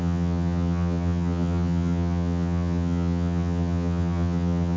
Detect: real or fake fake